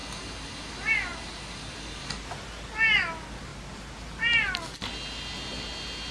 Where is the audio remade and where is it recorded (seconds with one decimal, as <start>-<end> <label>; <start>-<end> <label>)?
0.0-6.1 recorded